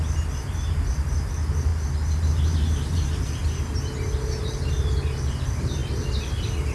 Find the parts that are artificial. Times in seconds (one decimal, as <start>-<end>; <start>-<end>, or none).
0.0-1.7; 2.2-3.4; 4.4-5.8